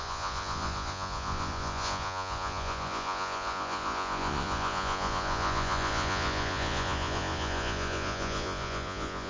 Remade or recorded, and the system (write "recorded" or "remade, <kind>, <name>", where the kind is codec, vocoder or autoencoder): remade, vocoder, Vocos